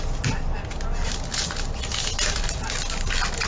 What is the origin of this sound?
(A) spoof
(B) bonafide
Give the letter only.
B